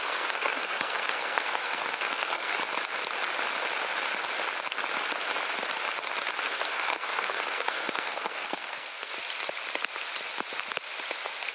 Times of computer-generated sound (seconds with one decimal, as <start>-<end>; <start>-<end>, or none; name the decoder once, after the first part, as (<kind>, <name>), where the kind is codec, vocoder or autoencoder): 0.0-2.5 (codec, SNAC); 6.4-9.1